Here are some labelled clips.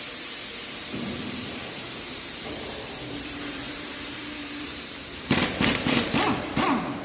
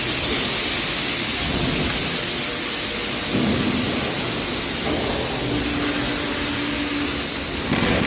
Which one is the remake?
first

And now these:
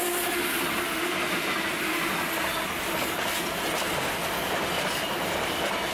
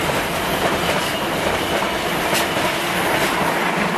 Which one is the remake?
second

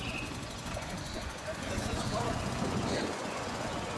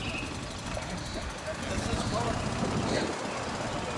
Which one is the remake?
first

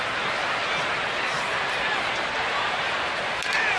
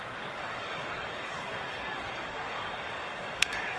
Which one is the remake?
second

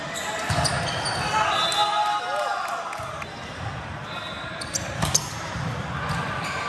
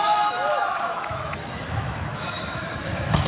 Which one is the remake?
second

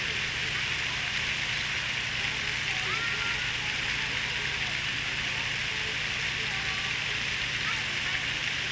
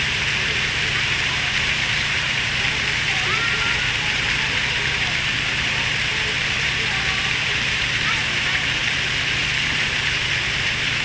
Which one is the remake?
second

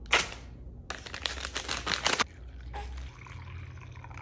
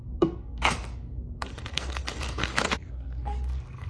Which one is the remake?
second